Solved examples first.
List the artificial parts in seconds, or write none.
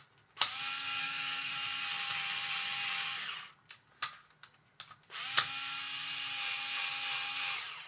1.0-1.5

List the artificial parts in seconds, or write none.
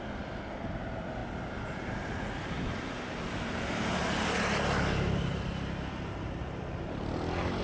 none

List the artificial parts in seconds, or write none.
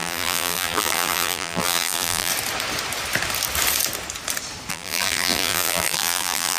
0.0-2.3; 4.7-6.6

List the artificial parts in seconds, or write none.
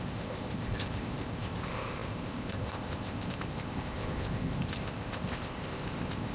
0.0-6.3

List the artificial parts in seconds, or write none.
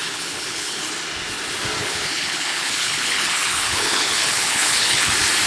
0.0-0.9; 1.8-5.1